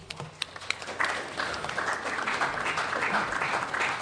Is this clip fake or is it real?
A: real